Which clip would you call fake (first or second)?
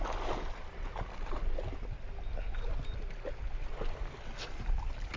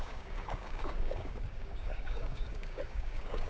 second